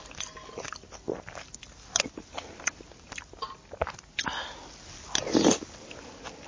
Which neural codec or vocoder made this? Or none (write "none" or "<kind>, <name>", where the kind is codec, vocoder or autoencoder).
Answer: none